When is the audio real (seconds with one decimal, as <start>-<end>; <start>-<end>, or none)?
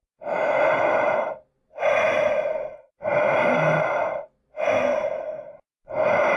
0.0-6.4